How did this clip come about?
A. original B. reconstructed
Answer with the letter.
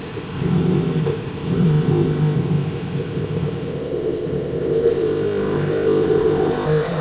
B